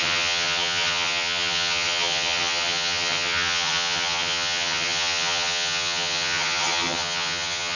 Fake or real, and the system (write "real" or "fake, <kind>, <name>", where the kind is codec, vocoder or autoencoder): fake, vocoder, HiFi-GAN